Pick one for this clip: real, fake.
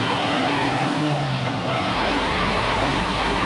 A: fake